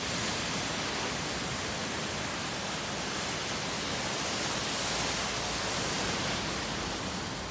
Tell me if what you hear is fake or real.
real